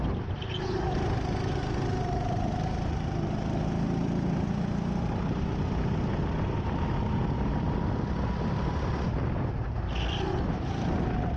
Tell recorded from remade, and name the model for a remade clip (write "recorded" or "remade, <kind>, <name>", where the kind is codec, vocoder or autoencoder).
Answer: recorded